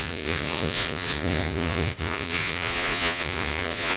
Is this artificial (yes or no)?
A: yes